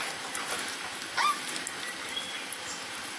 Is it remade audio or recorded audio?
recorded